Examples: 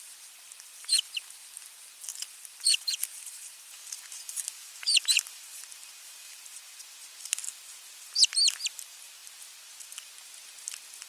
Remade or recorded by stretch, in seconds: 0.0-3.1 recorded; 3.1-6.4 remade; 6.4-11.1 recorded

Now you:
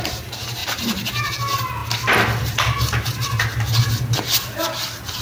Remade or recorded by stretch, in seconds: 0.0-0.6 recorded; 0.6-1.3 remade; 1.3-5.2 recorded

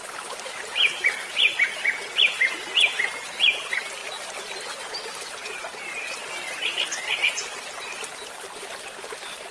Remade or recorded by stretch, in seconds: 0.0-9.5 recorded